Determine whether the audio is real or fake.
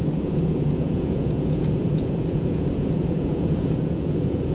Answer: fake